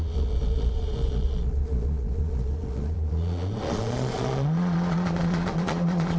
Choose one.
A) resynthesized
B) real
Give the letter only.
A